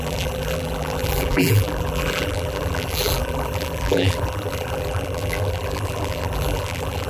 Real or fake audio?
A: fake